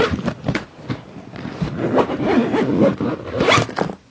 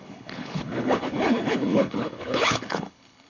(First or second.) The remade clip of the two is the second